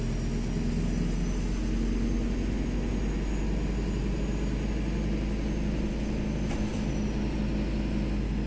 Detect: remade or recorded recorded